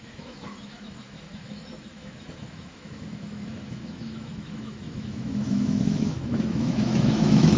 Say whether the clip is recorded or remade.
remade